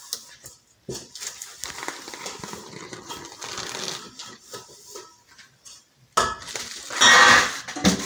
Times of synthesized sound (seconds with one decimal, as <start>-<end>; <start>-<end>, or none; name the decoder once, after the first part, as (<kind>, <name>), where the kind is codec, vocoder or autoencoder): none